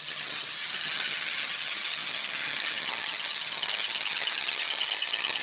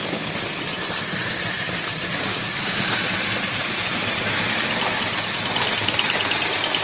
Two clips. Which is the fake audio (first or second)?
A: first